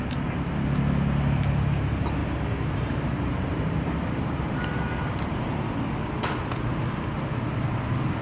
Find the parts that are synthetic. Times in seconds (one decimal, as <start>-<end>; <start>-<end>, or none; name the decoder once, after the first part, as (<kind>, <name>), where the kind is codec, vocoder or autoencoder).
2.2-5.6 (vocoder, BigVGAN v2)